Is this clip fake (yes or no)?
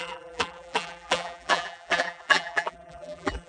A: yes